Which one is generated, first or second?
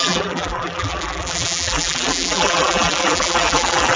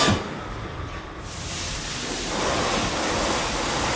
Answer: first